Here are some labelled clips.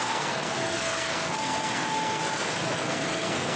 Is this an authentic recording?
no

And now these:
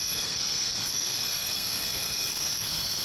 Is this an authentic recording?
no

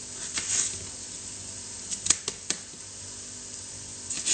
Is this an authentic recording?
yes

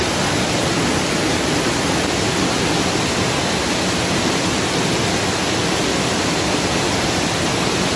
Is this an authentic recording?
yes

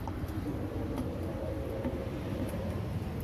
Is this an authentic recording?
yes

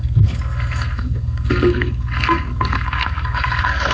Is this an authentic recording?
no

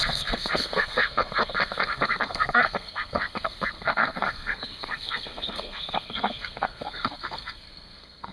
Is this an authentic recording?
no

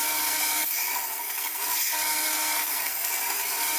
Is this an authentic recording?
no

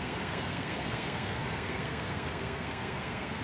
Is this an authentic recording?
no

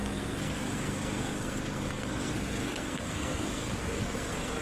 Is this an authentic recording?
no